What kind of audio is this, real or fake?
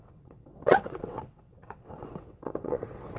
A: fake